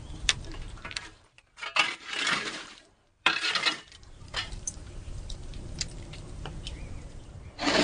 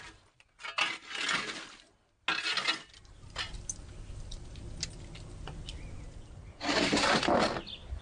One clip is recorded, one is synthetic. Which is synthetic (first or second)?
first